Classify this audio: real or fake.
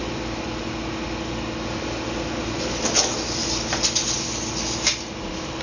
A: real